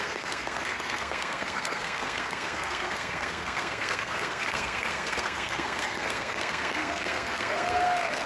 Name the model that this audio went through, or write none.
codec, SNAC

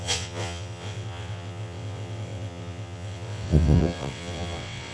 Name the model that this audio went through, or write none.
vocoder, WaveNeXt